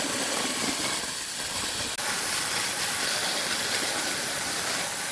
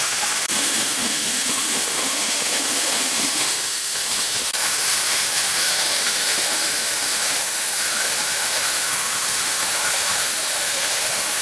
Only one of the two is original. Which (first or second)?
first